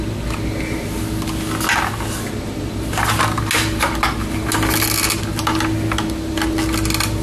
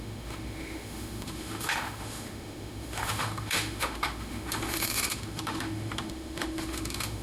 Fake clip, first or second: second